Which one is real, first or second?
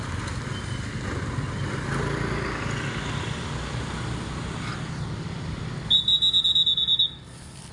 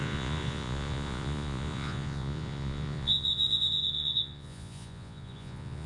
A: first